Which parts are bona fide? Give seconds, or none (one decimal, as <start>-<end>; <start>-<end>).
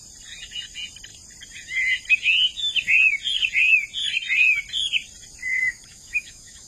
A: 0.0-5.6